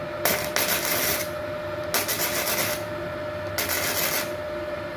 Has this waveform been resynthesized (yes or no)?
no